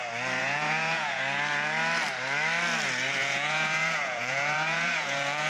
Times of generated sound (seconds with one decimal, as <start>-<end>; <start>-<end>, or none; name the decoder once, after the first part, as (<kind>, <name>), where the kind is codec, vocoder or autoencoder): 0.4-1.2 (vocoder, Vocos); 3.2-5.5